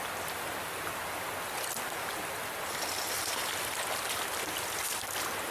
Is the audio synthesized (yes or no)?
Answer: no